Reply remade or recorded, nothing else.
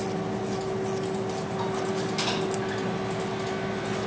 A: recorded